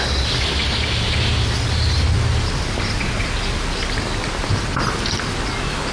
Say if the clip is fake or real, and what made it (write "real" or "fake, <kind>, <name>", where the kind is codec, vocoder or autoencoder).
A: fake, vocoder, BigVGAN v2